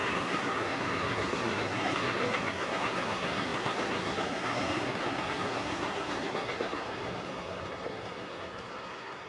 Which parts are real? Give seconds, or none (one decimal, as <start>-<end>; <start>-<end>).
none